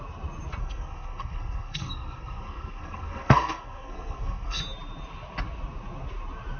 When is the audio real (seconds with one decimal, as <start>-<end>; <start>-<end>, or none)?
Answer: 0.0-0.6; 4.6-6.6